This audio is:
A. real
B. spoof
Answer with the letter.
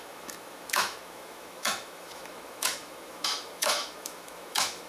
B